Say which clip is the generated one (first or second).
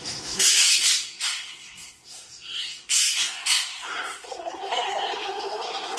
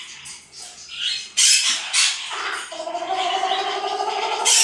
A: first